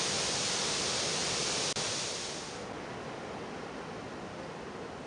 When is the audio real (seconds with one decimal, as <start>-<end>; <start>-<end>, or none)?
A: 0.0-5.1